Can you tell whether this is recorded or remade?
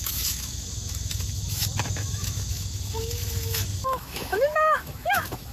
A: remade